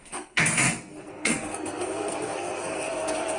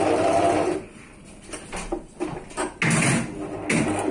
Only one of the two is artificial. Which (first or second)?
first